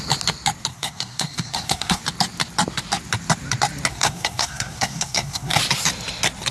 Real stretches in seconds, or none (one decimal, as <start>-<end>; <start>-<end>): 0.0-0.7; 2.0-3.9; 5.6-6.5